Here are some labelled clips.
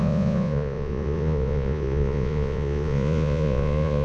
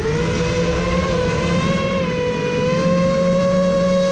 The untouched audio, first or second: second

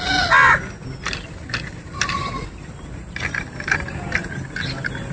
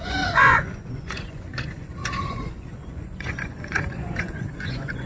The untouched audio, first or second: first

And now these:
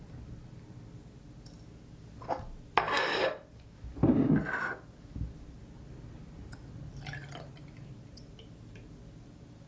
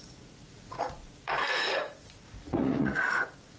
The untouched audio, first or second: first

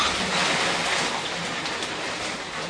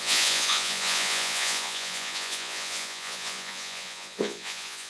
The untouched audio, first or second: first